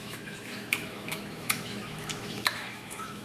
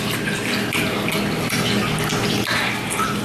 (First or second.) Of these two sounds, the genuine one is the second